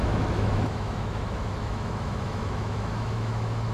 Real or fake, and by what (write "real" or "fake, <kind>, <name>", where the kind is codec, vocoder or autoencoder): fake, autoencoder, DAC-VAE